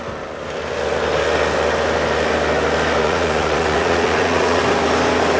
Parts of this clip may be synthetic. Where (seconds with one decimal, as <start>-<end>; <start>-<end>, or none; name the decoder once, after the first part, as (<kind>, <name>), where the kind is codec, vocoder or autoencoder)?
3.0-4.6 (vocoder, Vocos)